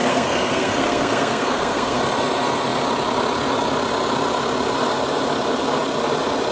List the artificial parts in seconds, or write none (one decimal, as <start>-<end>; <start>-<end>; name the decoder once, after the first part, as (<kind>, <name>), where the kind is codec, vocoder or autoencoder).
0.0-2.0 (codec, SNAC)